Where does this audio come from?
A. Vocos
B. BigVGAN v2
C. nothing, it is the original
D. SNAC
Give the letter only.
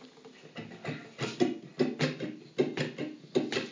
C